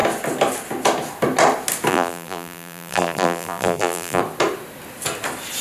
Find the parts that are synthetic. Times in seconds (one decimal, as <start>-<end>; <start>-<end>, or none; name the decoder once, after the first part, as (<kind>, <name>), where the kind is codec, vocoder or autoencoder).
1.9-4.2 (vocoder, BigVGAN v2)